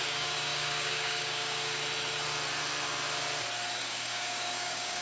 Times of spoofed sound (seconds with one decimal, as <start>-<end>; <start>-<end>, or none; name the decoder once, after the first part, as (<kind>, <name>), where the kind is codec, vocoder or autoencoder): 0.0-1.8 (codec, DAC); 3.8-5.0